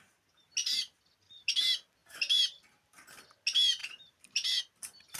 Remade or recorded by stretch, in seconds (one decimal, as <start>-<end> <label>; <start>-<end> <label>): 0.0-0.6 recorded; 0.6-1.4 remade; 1.4-2.0 recorded; 2.0-3.2 remade; 3.2-3.8 recorded; 3.8-4.6 remade; 4.6-5.2 recorded